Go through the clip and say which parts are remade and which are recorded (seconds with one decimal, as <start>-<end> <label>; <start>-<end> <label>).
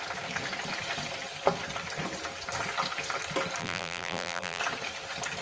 0.0-3.6 recorded; 3.6-4.6 remade; 4.6-5.4 recorded